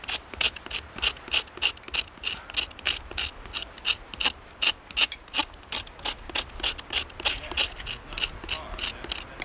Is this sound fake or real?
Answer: real